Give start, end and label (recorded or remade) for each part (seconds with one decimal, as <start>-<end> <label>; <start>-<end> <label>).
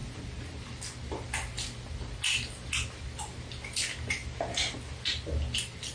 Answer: 0.0-5.9 recorded